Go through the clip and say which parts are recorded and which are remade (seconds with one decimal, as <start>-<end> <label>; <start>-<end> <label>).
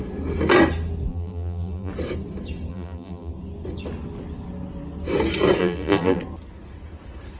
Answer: 0.0-1.1 recorded; 1.1-1.9 remade; 1.9-2.7 recorded; 2.7-3.3 remade; 3.3-5.6 recorded; 5.6-6.2 remade; 6.2-7.4 recorded